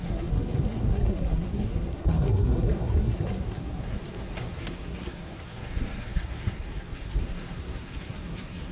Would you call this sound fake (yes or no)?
yes